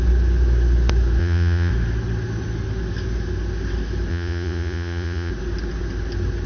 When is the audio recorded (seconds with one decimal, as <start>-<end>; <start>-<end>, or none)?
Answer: 0.0-1.2; 1.7-4.1; 5.3-6.5